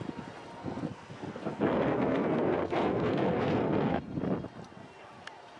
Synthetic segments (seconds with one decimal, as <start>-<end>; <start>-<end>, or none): 0.6-4.0